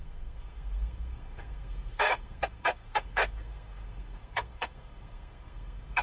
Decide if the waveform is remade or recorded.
remade